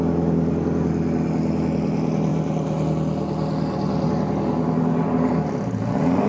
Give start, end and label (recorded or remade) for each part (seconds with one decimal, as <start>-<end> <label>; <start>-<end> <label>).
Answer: 0.0-6.3 recorded